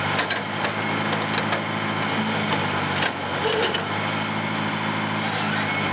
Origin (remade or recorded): recorded